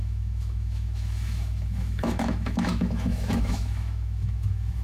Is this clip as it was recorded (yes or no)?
no